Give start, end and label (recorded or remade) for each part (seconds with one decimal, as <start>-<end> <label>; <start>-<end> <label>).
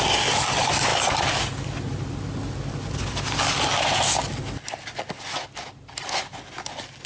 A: 0.0-7.1 recorded